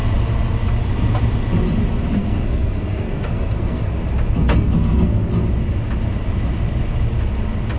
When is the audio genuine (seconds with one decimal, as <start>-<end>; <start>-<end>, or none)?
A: 0.0-2.2; 3.9-4.7; 5.3-7.8